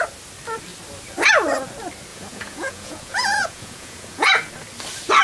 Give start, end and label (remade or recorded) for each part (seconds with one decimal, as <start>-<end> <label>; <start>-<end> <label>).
0.0-2.1 recorded; 2.1-4.5 remade; 4.5-5.2 recorded